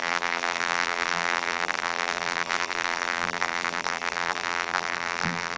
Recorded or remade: remade